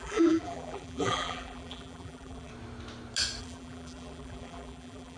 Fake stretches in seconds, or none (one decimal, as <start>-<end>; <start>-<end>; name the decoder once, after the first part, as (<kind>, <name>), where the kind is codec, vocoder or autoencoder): 0.0-2.5 (vocoder, BigVGAN v2); 3.4-5.2